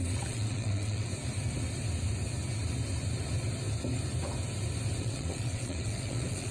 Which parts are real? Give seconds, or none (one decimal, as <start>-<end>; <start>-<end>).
1.1-5.0

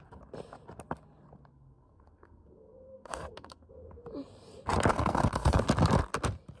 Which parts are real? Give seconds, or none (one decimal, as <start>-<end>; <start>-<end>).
0.0-1.5; 3.7-4.9; 5.6-6.6